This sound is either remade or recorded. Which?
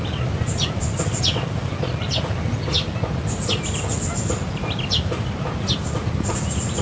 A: recorded